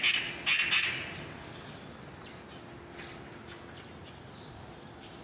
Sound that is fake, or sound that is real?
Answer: real